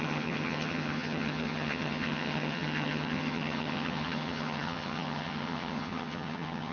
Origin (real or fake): fake